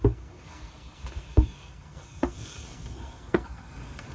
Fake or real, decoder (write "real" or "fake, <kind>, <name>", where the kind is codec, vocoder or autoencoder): fake, codec, SNAC